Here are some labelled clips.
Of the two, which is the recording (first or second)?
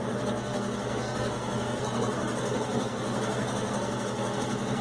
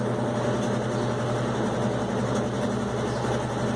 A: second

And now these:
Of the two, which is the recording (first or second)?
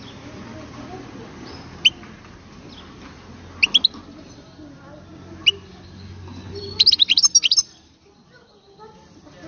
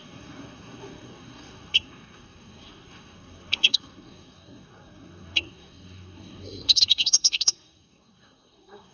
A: first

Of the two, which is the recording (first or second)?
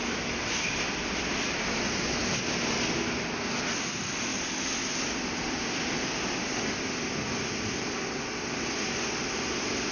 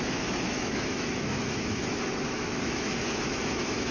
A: first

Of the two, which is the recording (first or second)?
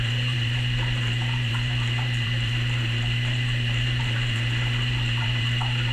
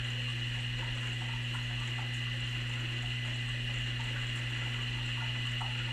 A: second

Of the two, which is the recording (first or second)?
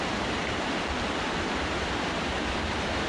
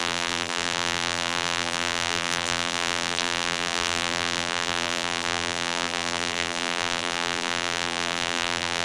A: first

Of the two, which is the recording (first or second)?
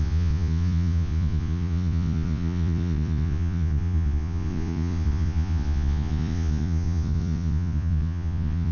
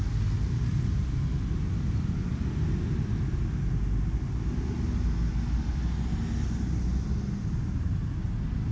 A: second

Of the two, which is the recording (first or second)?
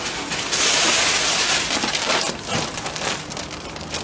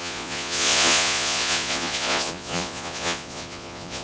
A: first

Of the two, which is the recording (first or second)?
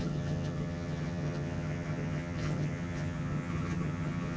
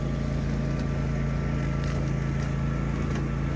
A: second